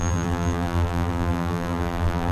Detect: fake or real fake